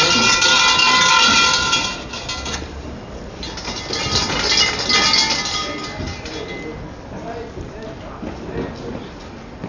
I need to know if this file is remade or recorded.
recorded